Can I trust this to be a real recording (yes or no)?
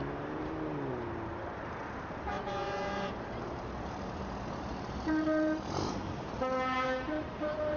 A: no